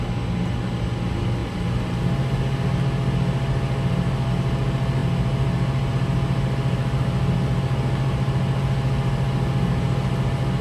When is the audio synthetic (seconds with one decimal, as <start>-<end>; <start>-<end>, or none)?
none